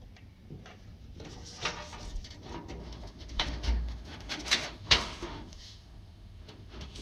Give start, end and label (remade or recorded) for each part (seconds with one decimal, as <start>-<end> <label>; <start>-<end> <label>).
0.0-2.8 recorded; 2.8-7.0 remade